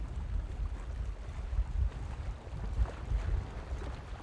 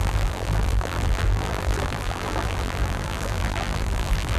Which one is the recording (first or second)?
first